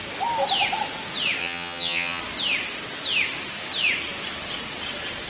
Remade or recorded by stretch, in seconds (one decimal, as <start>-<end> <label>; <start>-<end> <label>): 0.0-1.4 recorded; 1.4-2.2 remade; 2.2-5.3 recorded